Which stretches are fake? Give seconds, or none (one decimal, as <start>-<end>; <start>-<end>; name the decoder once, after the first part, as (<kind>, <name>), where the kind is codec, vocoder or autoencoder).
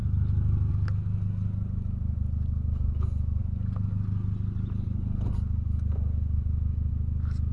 none